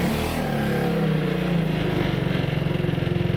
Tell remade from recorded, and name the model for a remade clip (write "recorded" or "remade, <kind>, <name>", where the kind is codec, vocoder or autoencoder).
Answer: recorded